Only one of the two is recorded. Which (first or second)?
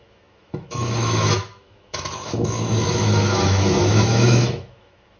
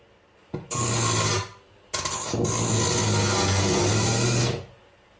second